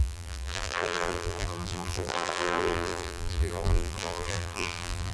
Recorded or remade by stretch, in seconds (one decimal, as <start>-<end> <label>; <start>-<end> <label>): 0.0-5.1 remade